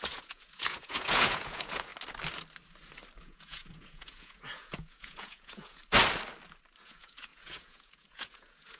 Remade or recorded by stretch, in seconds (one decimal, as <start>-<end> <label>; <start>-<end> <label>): 0.0-1.9 remade; 1.9-3.2 recorded; 3.2-5.8 remade; 5.8-6.8 recorded; 6.8-8.8 remade